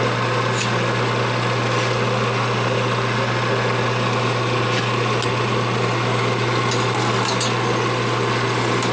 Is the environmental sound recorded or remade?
recorded